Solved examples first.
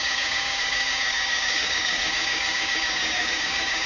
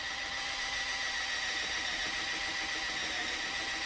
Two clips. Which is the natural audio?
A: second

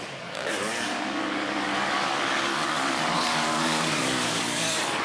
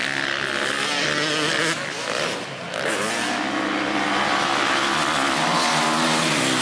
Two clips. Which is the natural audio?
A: second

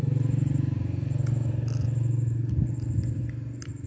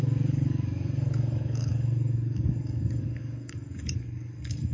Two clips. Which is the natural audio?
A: first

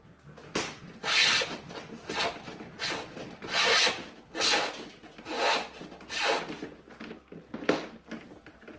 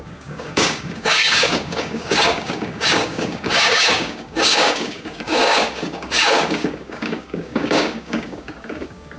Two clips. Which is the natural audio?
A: first